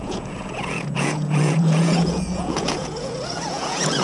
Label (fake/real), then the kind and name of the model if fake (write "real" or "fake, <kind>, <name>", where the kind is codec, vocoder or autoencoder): fake, vocoder, Vocos